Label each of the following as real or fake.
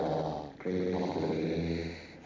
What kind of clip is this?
real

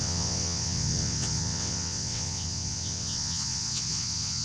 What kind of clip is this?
fake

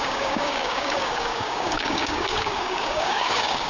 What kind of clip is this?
fake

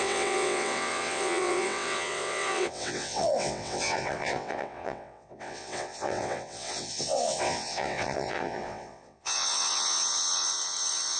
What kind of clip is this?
fake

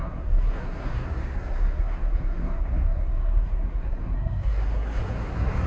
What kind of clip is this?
fake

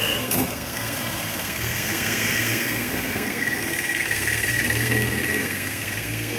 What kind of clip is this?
fake